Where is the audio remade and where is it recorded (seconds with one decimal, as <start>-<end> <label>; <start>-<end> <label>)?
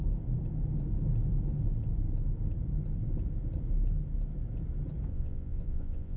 0.0-5.1 recorded; 5.1-6.2 remade